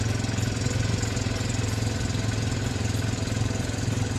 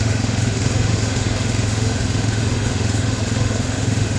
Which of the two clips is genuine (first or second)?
first